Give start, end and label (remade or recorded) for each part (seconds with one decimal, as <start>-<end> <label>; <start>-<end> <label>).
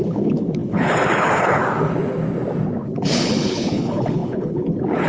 0.0-1.6 remade; 1.6-2.8 recorded; 2.8-5.1 remade